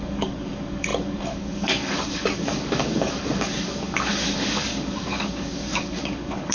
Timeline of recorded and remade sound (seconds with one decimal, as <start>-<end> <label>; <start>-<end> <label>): 0.0-6.5 remade

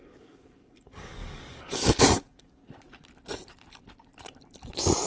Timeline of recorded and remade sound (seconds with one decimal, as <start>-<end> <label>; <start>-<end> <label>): 0.0-2.6 remade; 2.6-5.1 recorded

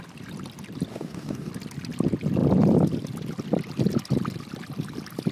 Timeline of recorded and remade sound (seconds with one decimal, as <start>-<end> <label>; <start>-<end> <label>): 0.0-0.9 recorded; 0.9-1.5 remade; 1.5-5.3 recorded

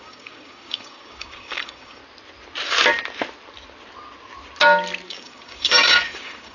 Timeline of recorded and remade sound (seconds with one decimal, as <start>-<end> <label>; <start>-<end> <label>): 0.0-2.0 remade; 2.0-5.1 recorded; 5.1-6.5 remade

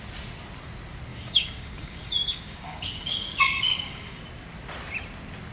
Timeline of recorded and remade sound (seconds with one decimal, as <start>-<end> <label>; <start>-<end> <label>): 0.0-1.1 recorded; 1.1-4.2 remade; 4.2-5.5 recorded

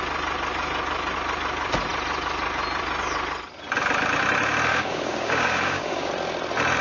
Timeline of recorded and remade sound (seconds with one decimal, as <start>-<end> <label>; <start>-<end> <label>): 0.0-4.7 recorded; 4.7-6.1 remade; 6.1-6.8 recorded

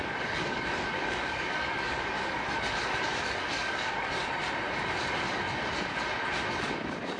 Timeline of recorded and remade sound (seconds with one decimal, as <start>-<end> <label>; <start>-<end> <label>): 0.0-4.2 remade; 4.2-6.5 recorded; 6.5-7.2 remade

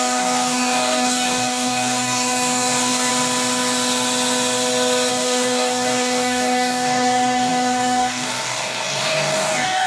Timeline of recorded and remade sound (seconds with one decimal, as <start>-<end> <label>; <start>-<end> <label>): 0.0-3.1 remade; 3.1-5.1 recorded; 5.1-9.9 remade